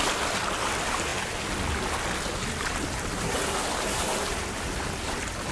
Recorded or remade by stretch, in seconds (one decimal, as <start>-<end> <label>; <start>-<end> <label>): 0.0-5.5 recorded

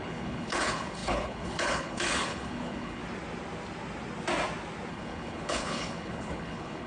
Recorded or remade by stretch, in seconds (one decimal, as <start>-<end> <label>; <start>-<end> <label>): 0.0-3.0 remade; 3.0-4.9 recorded; 4.9-6.9 remade

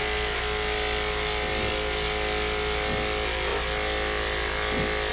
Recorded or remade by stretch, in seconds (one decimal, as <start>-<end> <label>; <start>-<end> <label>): 0.0-5.1 recorded

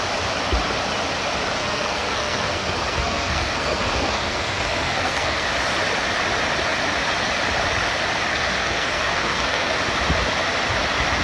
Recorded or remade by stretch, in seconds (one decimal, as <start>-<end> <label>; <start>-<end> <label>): 0.0-1.6 recorded; 1.6-5.5 remade; 5.5-8.3 recorded; 8.3-9.8 remade; 9.8-11.2 recorded